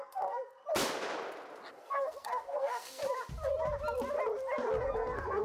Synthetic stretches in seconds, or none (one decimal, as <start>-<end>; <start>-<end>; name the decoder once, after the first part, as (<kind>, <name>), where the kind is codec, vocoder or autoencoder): 0.0-0.6 (codec, SNAC); 1.7-3.0; 4.8-5.4